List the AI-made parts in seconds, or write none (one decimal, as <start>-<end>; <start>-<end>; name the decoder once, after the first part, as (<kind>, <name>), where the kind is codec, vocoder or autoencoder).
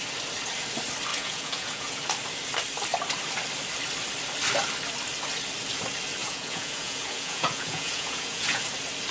1.1-2.0 (vocoder, Vocos); 6.2-8.6